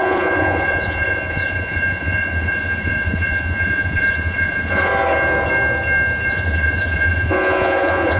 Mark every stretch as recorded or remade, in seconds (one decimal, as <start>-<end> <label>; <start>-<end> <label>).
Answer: 0.0-4.9 remade; 4.9-6.3 recorded; 6.3-8.2 remade